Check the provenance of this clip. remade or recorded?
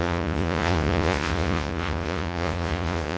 remade